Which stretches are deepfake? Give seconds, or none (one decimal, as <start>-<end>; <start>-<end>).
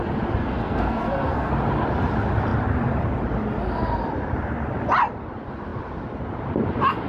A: 0.4-1.5